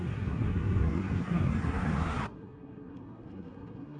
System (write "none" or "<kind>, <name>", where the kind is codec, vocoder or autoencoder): codec, SNAC